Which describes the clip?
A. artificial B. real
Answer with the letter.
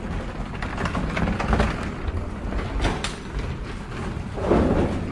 B